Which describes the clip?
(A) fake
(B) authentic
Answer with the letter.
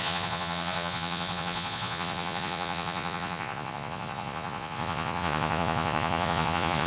A